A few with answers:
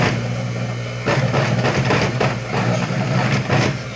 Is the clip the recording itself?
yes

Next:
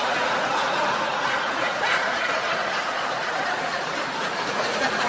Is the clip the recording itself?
no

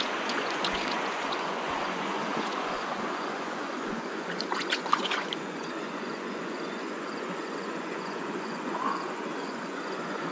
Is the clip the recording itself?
no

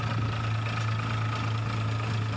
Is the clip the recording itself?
yes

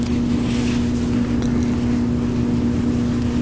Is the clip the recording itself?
yes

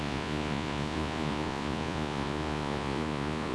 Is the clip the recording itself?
no